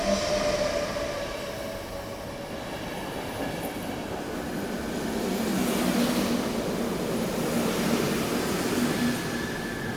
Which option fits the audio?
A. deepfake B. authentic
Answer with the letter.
B